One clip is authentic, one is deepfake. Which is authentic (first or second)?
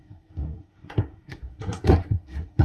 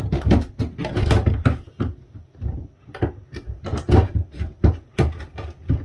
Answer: second